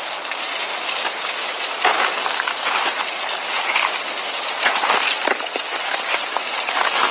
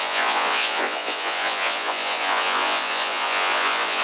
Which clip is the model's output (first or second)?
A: second